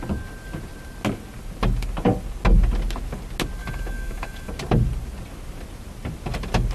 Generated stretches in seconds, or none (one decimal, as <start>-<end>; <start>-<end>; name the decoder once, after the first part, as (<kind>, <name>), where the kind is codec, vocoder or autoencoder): 3.6-4.5 (autoencoder, DAC-VAE)